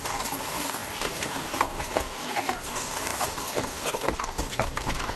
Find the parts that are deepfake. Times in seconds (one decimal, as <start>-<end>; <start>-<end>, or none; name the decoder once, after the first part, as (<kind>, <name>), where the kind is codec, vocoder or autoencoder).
0.0-5.2 (codec, DAC)